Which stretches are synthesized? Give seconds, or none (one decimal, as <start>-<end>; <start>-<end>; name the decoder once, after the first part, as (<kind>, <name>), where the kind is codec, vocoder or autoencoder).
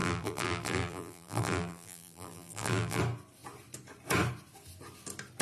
0.0-3.0 (vocoder, BigVGAN v2)